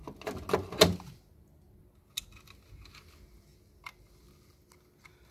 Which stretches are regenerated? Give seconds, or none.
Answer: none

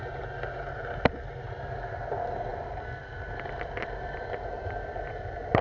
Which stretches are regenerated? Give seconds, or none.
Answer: none

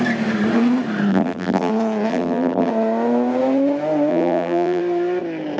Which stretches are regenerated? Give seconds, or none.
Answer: 1.1-1.7; 2.1-2.7; 4.1-4.8